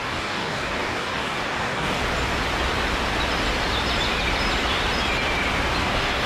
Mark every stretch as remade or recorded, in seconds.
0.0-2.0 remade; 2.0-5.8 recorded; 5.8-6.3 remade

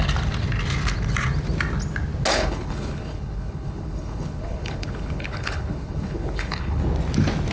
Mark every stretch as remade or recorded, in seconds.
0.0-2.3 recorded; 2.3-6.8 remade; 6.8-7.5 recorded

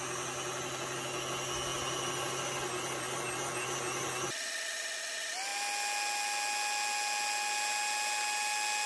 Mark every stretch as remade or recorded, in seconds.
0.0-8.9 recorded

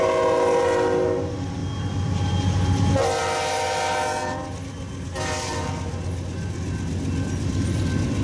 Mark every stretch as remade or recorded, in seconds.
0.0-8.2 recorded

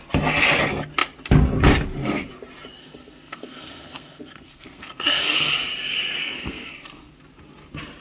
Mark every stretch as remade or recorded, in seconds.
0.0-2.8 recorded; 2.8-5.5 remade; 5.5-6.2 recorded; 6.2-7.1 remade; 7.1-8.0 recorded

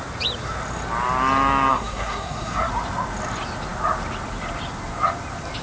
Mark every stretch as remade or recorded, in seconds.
0.0-1.7 recorded; 1.7-2.7 remade; 2.7-5.6 recorded

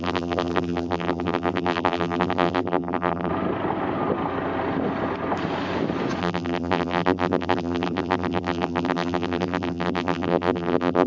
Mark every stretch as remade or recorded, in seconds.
0.0-3.3 remade; 3.3-6.2 recorded; 6.2-11.1 remade

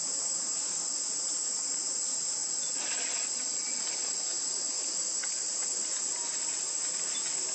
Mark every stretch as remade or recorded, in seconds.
0.0-2.4 recorded; 2.4-3.8 remade; 3.8-7.5 recorded